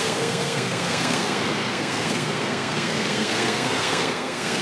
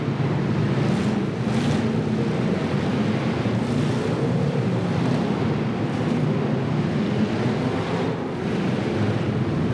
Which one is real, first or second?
second